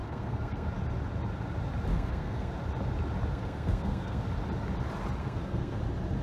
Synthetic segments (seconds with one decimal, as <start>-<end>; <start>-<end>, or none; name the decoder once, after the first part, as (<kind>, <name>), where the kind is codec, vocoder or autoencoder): 0.0-0.7 (codec, SNAC); 1.9-2.5; 3.3-4.2; 5.2-5.8